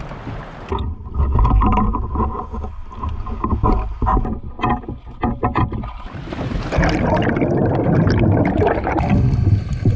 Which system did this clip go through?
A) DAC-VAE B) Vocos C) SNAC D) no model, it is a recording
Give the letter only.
D